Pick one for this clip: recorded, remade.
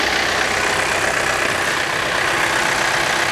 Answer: recorded